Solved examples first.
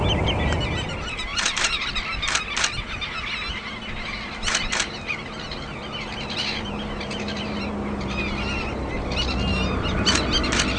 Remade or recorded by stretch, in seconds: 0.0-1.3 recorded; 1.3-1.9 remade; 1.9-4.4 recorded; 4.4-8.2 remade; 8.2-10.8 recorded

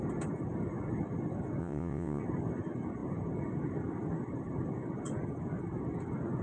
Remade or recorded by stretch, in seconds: 0.0-1.6 recorded; 1.6-2.2 remade; 2.2-6.4 recorded

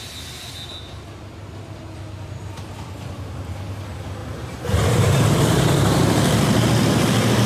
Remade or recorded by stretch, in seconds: 0.0-4.2 recorded; 4.2-5.5 remade; 5.5-7.5 recorded

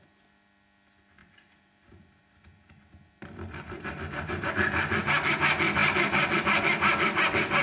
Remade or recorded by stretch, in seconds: 0.0-1.2 recorded; 1.2-4.5 remade; 4.5-7.6 recorded

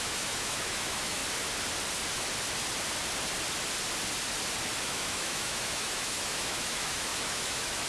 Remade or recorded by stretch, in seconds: 0.0-1.2 remade; 1.2-4.8 recorded; 4.8-7.9 remade

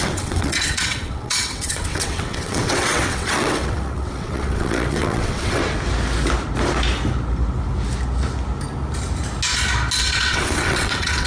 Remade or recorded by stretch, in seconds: 0.0-5.6 remade; 5.6-10.0 recorded; 10.0-11.3 remade